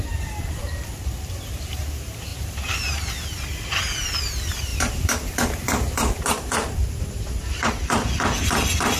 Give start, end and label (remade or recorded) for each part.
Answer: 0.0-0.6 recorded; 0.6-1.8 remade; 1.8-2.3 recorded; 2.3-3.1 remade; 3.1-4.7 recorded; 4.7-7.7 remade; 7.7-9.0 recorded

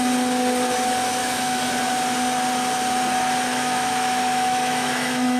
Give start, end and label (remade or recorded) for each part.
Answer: 0.0-1.2 recorded; 1.2-1.7 remade; 1.7-3.5 recorded; 3.5-5.4 remade

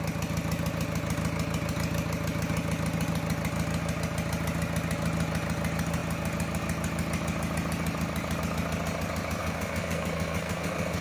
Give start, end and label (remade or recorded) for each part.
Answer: 0.0-9.4 recorded; 9.4-11.0 remade

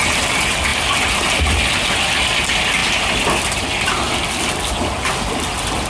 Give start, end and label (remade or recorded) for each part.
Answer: 0.0-5.9 recorded

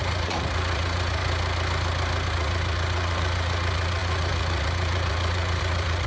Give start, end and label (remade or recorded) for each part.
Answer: 0.0-1.2 remade; 1.2-2.3 recorded; 2.3-6.1 remade